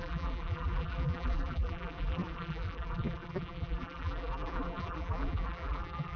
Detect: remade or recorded remade